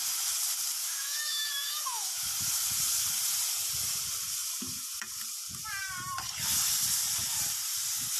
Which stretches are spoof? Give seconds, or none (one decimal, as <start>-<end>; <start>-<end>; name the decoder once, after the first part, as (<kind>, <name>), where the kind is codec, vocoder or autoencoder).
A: 0.8-2.3 (autoencoder, DAC-VAE)